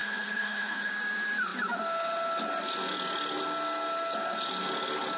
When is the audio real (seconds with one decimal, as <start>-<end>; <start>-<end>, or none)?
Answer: 0.9-5.2